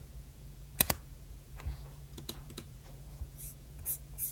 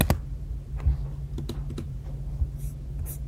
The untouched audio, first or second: second